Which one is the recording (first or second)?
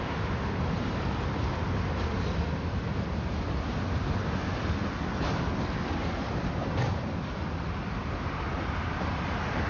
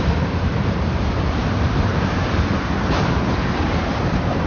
first